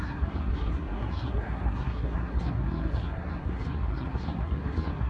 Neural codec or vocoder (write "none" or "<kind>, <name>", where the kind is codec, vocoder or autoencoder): codec, SNAC